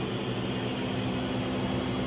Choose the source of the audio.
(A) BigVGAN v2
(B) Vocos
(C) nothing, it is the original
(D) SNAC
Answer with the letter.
C